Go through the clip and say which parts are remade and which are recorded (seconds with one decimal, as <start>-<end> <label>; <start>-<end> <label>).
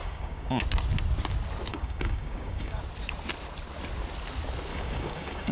0.0-0.6 remade; 0.6-1.7 recorded; 1.7-2.8 remade; 2.8-4.7 recorded; 4.7-5.5 remade